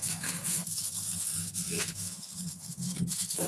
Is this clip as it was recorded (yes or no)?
no